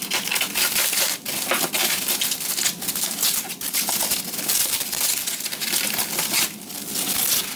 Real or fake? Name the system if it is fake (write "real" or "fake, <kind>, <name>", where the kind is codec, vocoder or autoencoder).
real